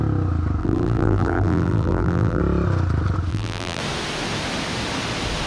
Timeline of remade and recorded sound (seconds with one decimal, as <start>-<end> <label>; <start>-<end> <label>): 0.0-0.6 recorded; 0.6-2.4 remade; 2.4-3.3 recorded; 3.3-3.8 remade; 3.8-5.5 recorded

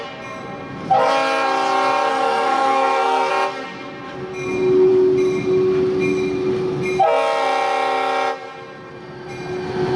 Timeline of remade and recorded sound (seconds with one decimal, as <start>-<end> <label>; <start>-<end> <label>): 0.0-2.1 recorded; 2.1-3.3 remade; 3.3-10.0 recorded

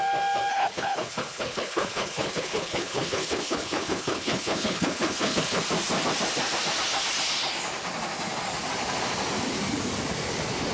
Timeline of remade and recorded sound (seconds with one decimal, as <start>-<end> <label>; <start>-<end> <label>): 0.0-0.5 recorded; 0.5-5.6 remade; 5.6-10.7 recorded

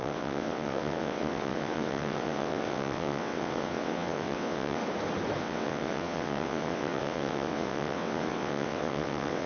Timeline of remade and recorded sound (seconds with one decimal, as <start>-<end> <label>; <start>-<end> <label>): 0.0-4.8 remade; 4.8-5.4 recorded; 5.4-9.5 remade

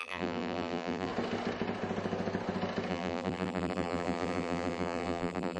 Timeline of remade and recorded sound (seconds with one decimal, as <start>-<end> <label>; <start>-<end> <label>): 0.0-1.1 remade; 1.1-2.9 recorded; 2.9-5.6 remade

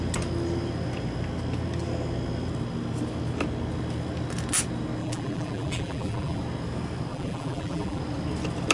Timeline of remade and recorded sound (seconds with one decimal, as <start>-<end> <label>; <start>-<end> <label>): 0.0-5.0 recorded; 5.0-6.4 remade; 6.4-7.1 recorded; 7.1-8.0 remade; 8.0-8.7 recorded